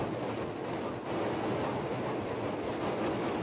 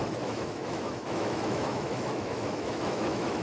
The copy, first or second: second